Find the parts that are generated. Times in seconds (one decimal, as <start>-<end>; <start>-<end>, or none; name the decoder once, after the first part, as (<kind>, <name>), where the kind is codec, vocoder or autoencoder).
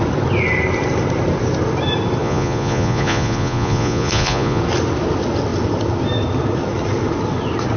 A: 2.2-4.6 (vocoder, Vocos)